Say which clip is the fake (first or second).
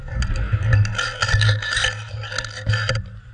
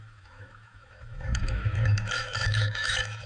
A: second